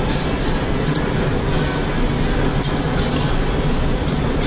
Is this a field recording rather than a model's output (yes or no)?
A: yes